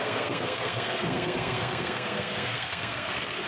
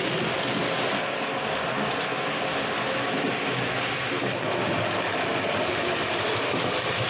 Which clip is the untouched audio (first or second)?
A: second